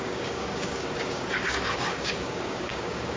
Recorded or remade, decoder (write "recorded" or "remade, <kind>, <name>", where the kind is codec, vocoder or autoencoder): remade, codec, DAC